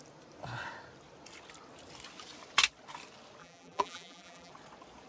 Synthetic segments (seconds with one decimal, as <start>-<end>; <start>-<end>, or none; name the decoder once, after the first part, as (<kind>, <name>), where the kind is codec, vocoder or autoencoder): 3.4-4.5 (vocoder, BigVGAN v2)